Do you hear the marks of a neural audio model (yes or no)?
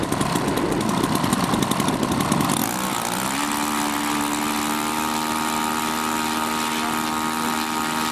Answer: no